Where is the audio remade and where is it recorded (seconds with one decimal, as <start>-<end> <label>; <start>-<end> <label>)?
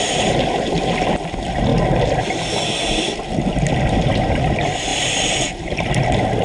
0.0-6.4 recorded